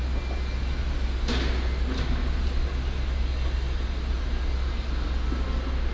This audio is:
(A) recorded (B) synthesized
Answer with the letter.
A